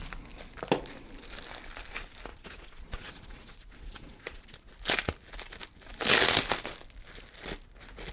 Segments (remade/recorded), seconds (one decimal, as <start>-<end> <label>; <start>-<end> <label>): 0.0-2.3 recorded; 2.3-4.8 remade; 4.8-8.1 recorded

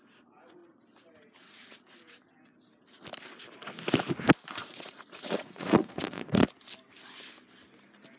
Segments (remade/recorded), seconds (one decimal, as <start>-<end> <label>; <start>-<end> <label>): 0.0-0.6 remade; 0.6-4.5 recorded; 4.5-6.4 remade; 6.4-8.2 recorded

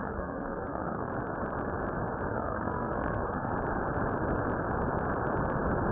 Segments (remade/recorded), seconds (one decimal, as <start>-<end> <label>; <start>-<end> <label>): 0.0-1.1 remade; 1.1-2.3 recorded; 2.3-3.5 remade; 3.5-5.9 recorded